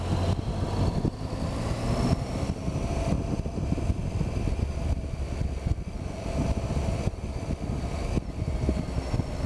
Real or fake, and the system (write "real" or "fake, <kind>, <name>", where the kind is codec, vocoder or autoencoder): real